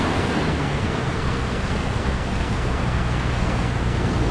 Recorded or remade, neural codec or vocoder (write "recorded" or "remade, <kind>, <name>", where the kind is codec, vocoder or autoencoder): remade, codec, SNAC